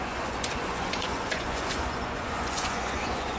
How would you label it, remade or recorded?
remade